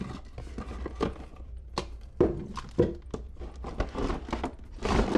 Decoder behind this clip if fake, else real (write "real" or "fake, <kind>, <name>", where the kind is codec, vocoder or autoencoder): real